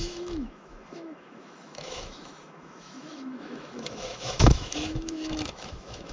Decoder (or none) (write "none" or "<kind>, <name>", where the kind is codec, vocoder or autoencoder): autoencoder, DAC-VAE